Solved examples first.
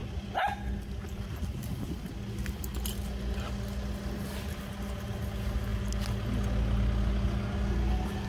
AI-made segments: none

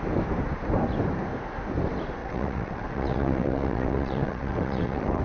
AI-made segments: 2.2-5.2